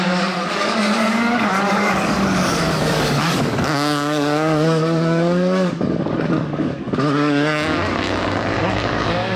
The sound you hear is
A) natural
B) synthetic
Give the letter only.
B